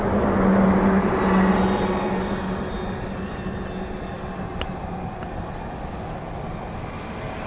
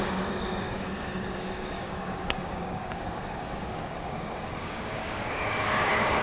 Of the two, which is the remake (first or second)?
second